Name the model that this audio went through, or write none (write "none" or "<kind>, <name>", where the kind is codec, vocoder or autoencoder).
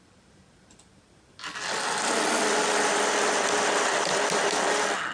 none